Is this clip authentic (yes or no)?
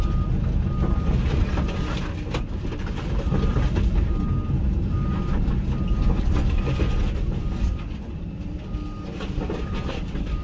yes